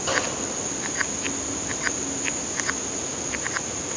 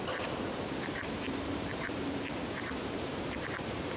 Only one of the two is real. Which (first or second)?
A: first